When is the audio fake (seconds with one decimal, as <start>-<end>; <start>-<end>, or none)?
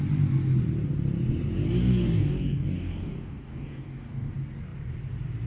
1.8-4.3